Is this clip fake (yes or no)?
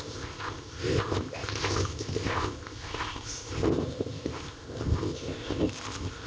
yes